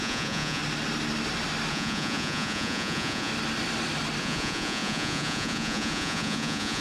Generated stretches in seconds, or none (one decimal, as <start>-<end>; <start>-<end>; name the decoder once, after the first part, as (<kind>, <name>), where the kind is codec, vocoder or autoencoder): 0.0-0.6 (vocoder, Vocos); 1.7-3.3; 4.2-6.8